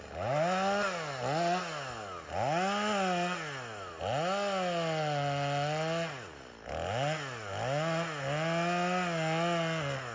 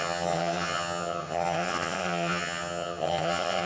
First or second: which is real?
first